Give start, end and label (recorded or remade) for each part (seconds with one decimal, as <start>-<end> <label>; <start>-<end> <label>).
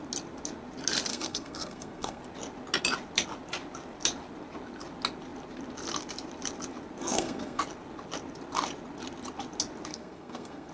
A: 0.0-1.1 recorded; 1.1-2.2 remade; 2.2-7.0 recorded; 7.0-7.6 remade; 7.6-9.9 recorded; 9.9-10.7 remade